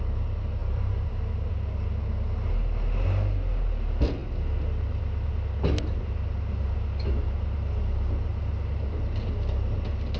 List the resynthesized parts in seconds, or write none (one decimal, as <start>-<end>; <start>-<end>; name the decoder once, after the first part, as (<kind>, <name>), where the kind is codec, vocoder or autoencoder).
0.6-1.5 (vocoder, BigVGAN v2); 8.3-9.0